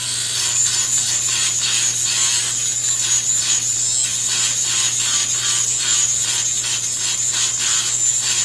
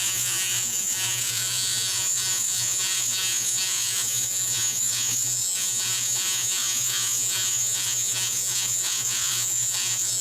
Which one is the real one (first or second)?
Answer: first